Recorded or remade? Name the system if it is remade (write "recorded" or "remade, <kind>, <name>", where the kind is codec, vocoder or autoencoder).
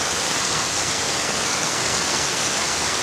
remade, codec, SNAC